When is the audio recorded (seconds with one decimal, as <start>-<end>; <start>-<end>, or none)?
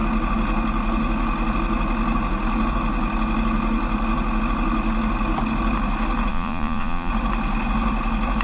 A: 0.0-6.3; 7.1-8.4